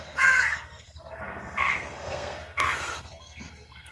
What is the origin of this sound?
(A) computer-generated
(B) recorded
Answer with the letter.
A